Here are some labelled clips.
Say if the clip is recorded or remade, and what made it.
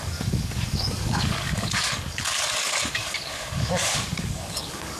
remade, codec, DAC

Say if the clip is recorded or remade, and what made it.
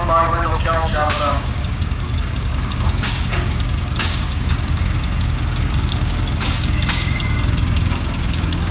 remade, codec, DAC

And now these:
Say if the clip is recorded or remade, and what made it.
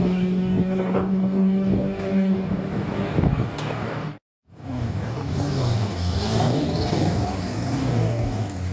remade, codec, DAC